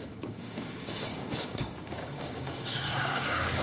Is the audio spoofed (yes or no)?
yes